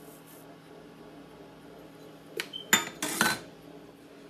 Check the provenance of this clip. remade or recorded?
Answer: recorded